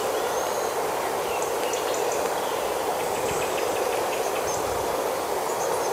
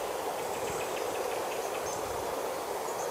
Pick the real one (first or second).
first